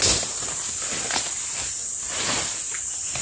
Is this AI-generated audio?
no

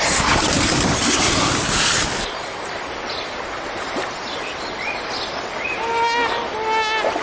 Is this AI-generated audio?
no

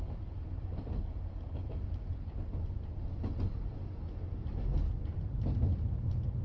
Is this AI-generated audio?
no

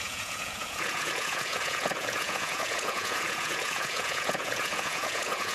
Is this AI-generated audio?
yes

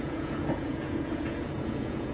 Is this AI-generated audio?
yes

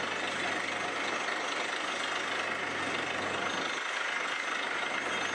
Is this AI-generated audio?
no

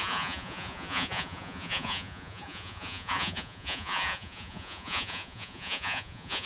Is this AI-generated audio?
yes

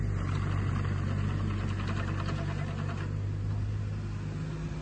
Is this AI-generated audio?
no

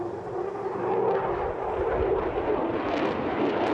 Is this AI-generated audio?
no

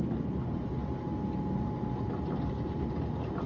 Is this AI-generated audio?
no